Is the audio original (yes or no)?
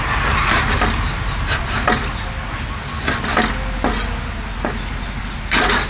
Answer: yes